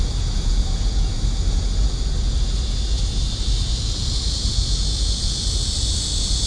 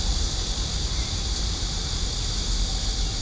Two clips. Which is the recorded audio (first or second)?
second